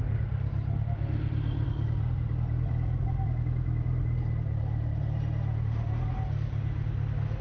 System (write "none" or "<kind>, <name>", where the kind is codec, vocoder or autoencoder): none